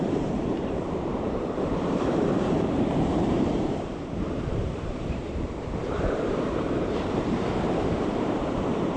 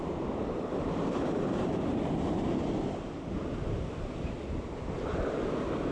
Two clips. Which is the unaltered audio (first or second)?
second